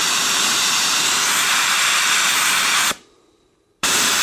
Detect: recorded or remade remade